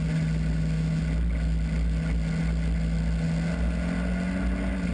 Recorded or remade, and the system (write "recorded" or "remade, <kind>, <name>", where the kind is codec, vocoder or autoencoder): recorded